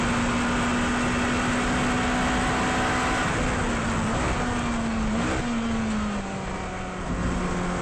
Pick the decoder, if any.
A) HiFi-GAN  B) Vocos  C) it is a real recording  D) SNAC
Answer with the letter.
C